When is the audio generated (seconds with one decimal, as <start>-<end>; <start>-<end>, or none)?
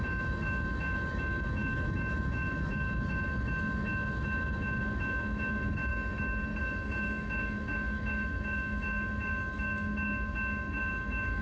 0.0-5.9; 6.6-11.4